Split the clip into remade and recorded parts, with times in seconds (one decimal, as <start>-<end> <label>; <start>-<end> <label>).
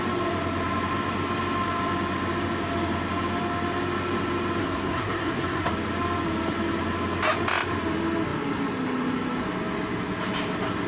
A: 0.0-4.6 recorded; 4.6-5.7 remade; 5.7-10.9 recorded